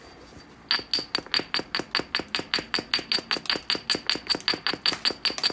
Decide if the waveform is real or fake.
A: real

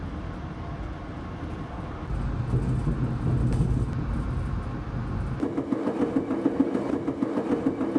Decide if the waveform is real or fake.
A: real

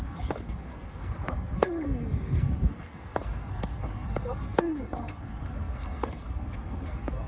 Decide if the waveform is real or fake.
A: fake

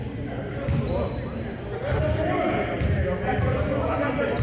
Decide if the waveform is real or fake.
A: real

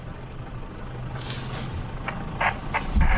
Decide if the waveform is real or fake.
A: real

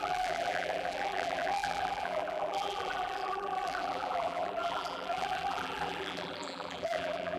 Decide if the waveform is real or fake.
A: fake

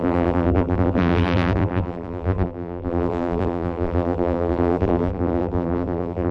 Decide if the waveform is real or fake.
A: fake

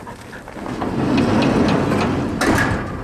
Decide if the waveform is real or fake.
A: real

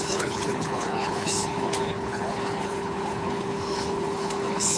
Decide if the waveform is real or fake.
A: fake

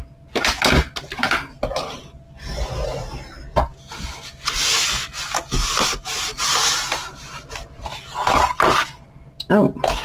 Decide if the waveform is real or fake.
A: real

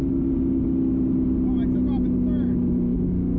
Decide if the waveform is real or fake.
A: real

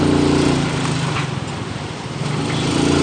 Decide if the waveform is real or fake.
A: fake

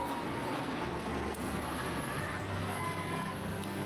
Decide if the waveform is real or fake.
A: fake